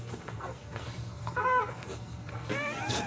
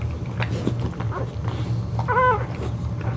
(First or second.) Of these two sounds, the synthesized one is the first